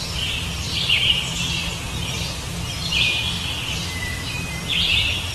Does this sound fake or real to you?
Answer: real